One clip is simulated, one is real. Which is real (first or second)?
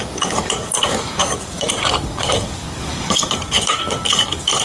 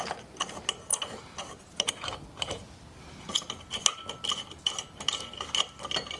second